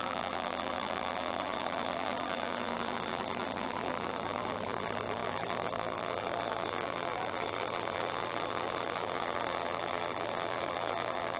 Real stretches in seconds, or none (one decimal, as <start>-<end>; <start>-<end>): none